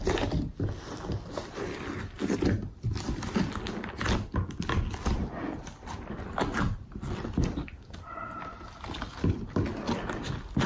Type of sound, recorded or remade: recorded